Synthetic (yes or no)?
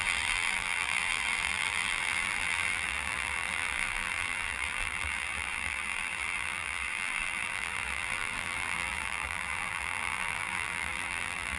yes